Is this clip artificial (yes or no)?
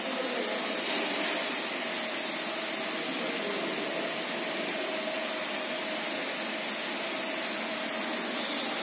no